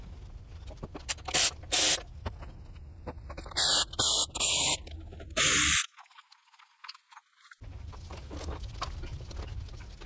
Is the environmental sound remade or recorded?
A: recorded